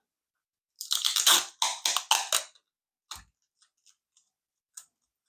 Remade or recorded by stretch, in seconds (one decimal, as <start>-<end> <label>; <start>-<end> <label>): 0.0-5.3 recorded